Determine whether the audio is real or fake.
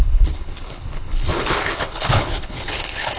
fake